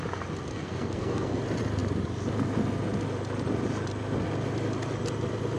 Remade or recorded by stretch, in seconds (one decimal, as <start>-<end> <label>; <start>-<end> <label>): 0.0-0.5 recorded; 0.5-1.4 remade; 1.4-5.6 recorded